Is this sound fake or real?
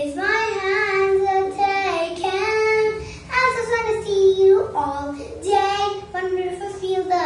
real